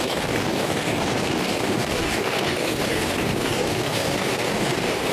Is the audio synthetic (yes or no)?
yes